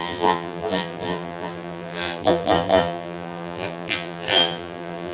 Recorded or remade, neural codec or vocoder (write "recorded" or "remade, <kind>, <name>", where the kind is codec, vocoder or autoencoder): remade, vocoder, BigVGAN v2